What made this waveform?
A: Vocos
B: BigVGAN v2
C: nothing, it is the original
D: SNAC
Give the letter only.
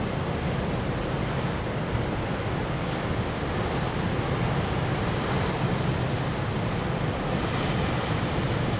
C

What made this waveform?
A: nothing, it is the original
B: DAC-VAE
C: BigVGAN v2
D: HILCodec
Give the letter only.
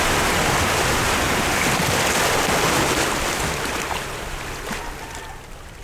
A